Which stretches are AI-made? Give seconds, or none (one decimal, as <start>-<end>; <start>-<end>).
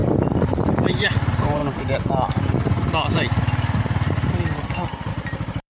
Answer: 0.9-1.6; 5.1-5.8